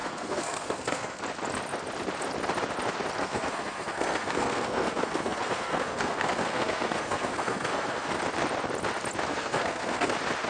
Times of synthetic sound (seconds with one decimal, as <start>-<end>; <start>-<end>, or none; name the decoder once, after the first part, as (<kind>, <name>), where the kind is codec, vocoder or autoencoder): 0.0-1.2 (codec, SNAC); 3.2-8.2; 9.3-10.1